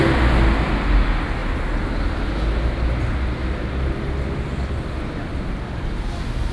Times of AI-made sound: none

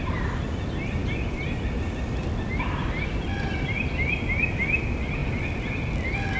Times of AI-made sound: none

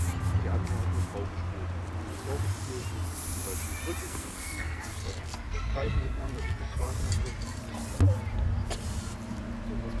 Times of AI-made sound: 4.0-7.0

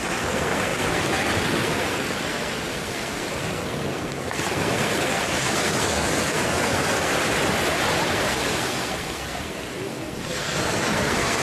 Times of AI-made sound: 0.0-7.1; 8.1-11.4